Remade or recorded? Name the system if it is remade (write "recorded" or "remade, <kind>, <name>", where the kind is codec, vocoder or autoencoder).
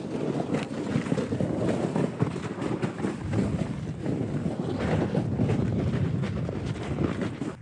recorded